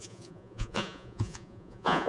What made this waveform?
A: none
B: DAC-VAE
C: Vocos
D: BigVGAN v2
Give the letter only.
C